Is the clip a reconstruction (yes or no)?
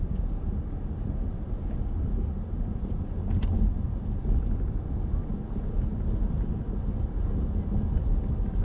no